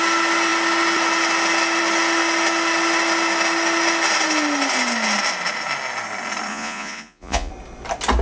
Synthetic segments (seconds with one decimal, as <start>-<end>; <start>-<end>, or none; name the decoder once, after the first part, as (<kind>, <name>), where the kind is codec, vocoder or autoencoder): 6.5-7.5 (vocoder, Vocos)